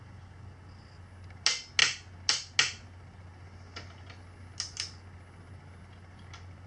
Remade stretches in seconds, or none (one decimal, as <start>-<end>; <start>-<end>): none